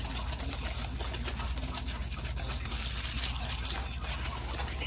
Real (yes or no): yes